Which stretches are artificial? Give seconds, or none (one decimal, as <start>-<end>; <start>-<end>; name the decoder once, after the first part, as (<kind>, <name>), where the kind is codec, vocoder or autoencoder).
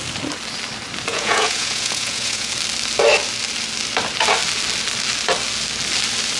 1.1-2.5 (vocoder, Vocos)